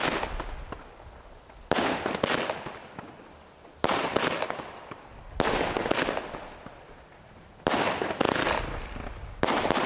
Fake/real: real